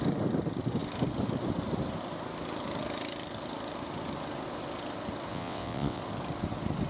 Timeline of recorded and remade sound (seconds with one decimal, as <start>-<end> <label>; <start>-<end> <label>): 0.0-5.3 recorded; 5.3-6.0 remade; 6.0-6.9 recorded